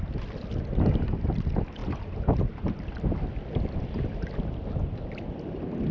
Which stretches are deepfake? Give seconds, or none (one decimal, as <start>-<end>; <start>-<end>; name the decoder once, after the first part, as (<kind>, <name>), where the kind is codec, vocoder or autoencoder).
none